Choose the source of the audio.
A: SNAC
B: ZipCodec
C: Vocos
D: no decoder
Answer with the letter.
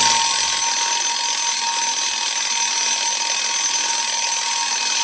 D